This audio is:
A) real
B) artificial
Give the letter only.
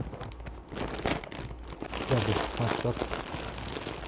A